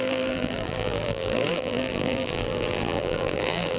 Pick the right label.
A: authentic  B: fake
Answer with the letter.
B